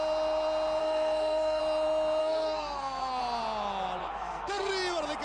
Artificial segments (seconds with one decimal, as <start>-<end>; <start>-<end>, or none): 0.8-1.6; 2.2-3.2; 4.0-4.7

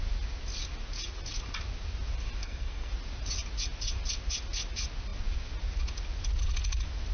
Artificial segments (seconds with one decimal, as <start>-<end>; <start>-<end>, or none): 2.4-2.9

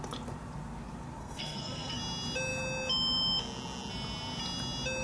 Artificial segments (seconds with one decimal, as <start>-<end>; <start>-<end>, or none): 1.2-2.0

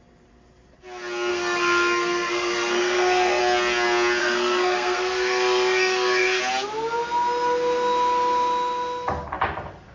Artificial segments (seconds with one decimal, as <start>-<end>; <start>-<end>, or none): 1.3-3.4; 4.2-6.4

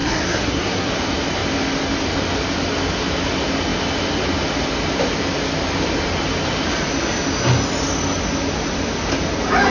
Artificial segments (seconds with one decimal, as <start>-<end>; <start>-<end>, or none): 0.0-0.9